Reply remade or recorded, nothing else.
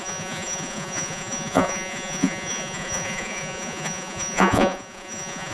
remade